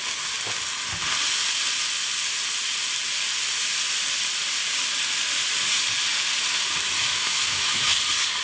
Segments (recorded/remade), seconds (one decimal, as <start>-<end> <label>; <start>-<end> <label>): 0.0-7.1 recorded; 7.1-8.0 remade; 8.0-8.4 recorded